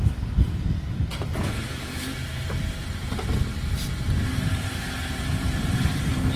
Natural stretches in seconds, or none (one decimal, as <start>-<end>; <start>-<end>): 0.0-5.4; 6.0-6.4